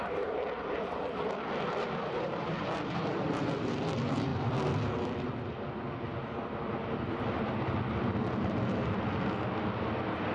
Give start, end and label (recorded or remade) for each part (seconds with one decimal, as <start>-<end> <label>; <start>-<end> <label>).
0.0-10.3 recorded